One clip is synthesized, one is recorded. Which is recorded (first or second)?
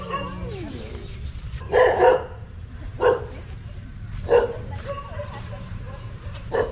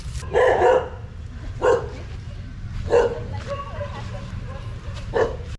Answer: second